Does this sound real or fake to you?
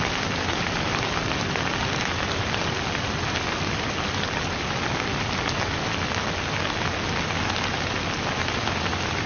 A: real